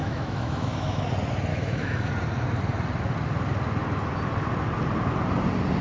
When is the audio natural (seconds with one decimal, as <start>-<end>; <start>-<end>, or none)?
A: 1.0-1.5; 2.1-5.8